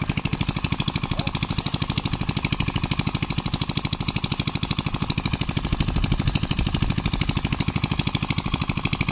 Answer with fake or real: real